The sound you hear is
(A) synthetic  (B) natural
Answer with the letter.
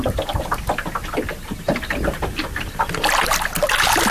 B